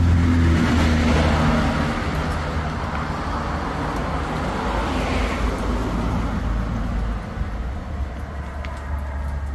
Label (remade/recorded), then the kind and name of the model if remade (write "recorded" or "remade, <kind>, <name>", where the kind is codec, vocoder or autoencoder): recorded